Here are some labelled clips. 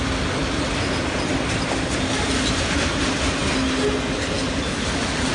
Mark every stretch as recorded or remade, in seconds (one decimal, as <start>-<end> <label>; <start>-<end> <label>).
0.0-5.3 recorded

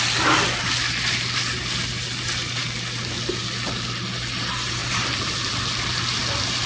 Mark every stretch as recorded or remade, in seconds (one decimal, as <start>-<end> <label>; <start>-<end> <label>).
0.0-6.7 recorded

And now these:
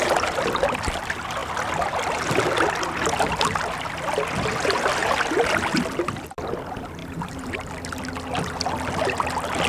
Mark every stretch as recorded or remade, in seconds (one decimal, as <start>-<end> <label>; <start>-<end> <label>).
0.0-7.0 recorded; 7.0-7.5 remade; 7.5-9.7 recorded

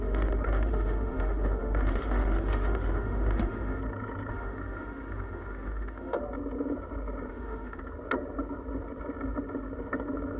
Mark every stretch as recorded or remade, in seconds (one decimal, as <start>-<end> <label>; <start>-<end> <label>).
0.0-3.8 remade; 3.8-4.3 recorded; 4.3-6.2 remade; 6.2-7.3 recorded; 7.3-7.8 remade; 7.8-10.4 recorded

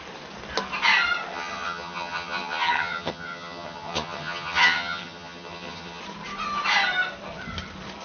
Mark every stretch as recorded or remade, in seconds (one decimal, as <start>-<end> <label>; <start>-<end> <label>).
0.0-1.3 recorded; 1.3-6.0 remade; 6.0-8.0 recorded

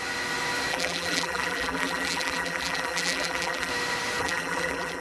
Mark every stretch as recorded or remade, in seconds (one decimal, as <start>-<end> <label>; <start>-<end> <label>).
0.0-0.7 recorded; 0.7-3.7 remade; 3.7-4.2 recorded; 4.2-5.0 remade

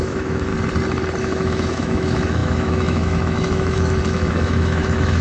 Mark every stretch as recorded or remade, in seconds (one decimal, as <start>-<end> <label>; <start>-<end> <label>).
0.0-0.5 remade; 0.5-1.2 recorded; 1.2-5.2 remade